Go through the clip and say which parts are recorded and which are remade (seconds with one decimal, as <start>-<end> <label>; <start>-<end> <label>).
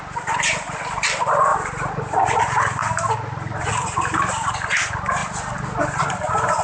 0.0-1.5 recorded; 1.5-2.4 remade; 2.4-5.2 recorded; 5.2-6.0 remade; 6.0-6.6 recorded